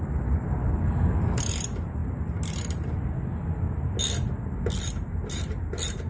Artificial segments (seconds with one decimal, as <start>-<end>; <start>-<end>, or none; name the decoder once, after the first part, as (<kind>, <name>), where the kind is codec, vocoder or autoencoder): none